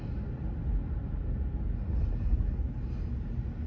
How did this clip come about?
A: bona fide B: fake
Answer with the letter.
A